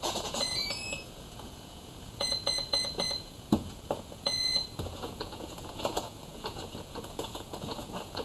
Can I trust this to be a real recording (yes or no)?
no